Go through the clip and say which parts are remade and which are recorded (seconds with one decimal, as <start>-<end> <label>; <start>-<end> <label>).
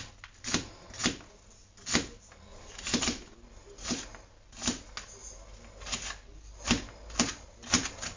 0.0-8.2 recorded